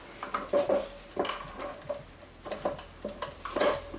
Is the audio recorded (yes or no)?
yes